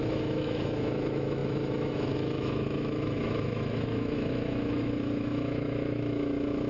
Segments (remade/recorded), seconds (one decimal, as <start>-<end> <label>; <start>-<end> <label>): 0.0-6.7 remade